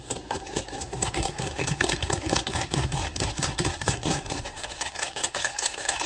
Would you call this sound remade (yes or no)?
yes